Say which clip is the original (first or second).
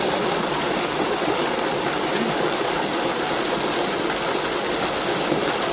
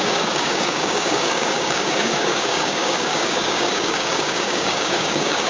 first